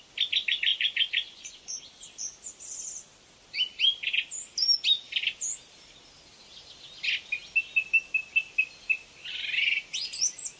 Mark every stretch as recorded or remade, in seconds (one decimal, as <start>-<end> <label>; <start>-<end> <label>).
0.0-0.7 recorded; 0.7-1.8 remade; 1.8-10.6 recorded